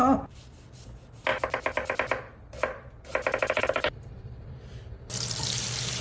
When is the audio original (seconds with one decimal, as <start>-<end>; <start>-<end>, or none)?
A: 0.0-1.3; 4.5-6.0